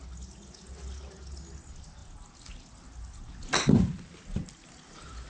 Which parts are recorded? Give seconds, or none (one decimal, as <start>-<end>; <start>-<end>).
0.0-5.3